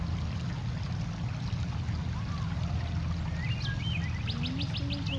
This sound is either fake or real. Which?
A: real